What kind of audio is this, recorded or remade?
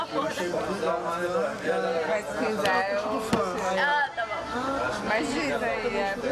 recorded